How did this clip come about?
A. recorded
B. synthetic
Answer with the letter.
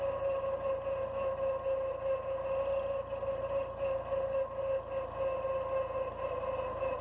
A